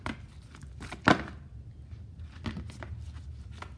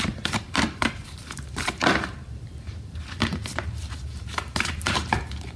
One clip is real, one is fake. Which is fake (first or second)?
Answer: second